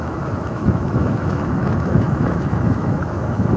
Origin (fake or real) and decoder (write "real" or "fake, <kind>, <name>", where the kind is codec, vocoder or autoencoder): fake, autoencoder, DAC-VAE